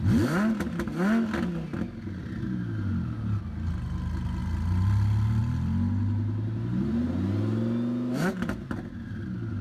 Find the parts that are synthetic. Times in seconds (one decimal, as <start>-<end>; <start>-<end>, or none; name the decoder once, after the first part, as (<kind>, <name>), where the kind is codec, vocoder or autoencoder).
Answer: none